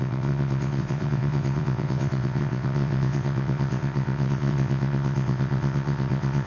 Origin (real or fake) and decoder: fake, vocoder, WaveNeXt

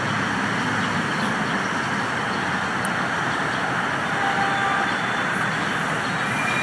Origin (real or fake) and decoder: real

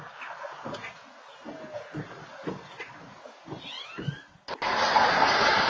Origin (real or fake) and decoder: real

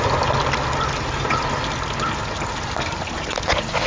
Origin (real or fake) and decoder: real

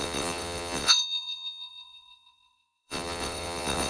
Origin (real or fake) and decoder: fake, vocoder, WaveNeXt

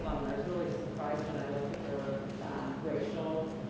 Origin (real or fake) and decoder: real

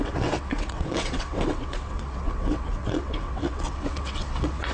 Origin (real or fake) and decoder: fake, vocoder, WaveNeXt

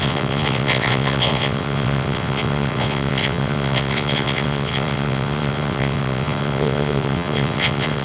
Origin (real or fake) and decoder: fake, vocoder, WaveNeXt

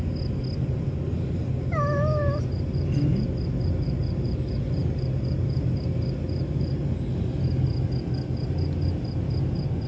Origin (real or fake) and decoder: real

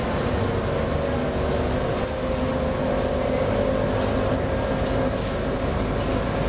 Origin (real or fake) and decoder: real